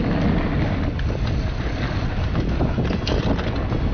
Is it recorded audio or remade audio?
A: recorded